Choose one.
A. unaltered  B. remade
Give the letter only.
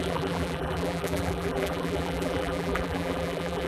B